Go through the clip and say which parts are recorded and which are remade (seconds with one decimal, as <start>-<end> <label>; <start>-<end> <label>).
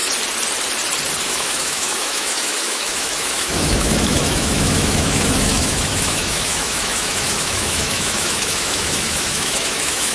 0.0-1.2 recorded; 1.2-10.1 remade